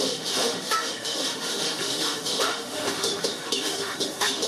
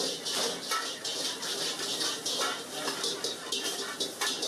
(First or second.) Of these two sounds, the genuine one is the second